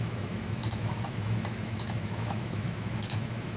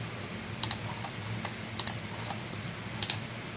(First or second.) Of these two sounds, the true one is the second